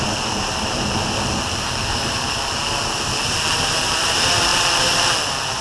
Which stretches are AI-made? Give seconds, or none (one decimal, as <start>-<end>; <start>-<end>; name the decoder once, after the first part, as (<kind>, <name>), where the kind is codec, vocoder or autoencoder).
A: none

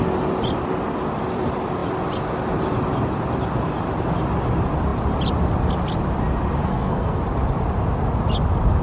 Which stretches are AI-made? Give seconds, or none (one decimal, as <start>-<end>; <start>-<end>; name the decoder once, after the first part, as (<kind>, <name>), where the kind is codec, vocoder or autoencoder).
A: 6.7-7.2 (codec, SNAC)

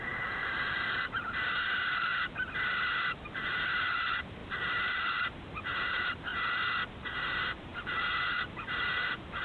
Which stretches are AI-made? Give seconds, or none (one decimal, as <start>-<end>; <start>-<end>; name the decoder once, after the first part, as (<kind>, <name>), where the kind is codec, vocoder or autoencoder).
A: 0.0-2.1 (vocoder, BigVGAN v2); 3.3-4.4; 5.0-6.3; 6.9-9.4

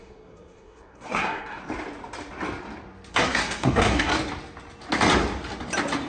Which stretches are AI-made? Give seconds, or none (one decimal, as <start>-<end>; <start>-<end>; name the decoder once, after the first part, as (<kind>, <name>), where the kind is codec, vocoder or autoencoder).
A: 0.0-1.6 (codec, SNAC); 3.1-4.1